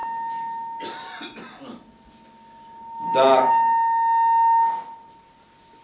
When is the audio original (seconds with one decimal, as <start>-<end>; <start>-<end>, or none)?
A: 0.0-5.8